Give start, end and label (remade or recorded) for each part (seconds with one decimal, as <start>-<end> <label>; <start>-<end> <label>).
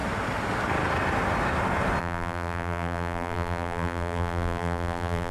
0.0-2.0 recorded; 2.0-5.3 remade